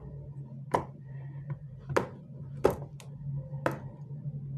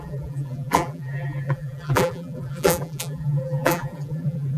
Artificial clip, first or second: second